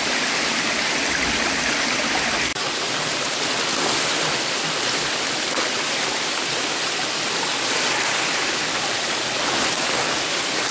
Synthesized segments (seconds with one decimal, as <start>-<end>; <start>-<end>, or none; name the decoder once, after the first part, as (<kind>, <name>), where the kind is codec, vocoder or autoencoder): none